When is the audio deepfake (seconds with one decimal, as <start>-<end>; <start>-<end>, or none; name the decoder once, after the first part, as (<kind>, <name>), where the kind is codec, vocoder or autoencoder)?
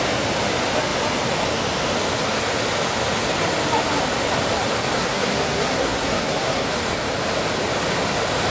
5.0-6.7 (codec, SNAC)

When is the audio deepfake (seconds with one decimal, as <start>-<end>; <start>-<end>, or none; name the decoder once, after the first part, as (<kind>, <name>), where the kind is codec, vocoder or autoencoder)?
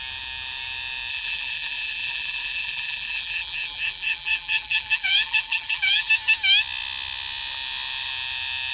1.1-6.1 (vocoder, BigVGAN v2)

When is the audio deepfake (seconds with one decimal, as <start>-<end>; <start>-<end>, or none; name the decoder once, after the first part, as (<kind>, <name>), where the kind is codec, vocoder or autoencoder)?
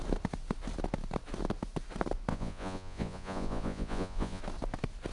2.3-4.4 (vocoder, Vocos)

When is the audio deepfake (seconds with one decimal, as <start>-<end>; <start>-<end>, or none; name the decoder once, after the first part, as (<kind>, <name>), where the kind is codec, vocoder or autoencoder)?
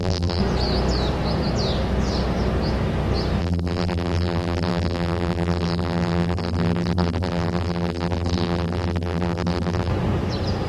0.0-0.4 (vocoder, BigVGAN v2); 3.4-9.9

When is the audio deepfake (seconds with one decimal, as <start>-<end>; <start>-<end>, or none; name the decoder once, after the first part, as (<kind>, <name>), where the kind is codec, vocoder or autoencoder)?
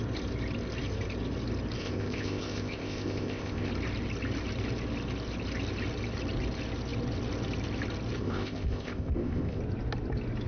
1.8-3.7 (codec, ZipCodec); 8.2-9.6